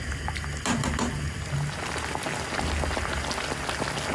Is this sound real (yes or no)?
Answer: yes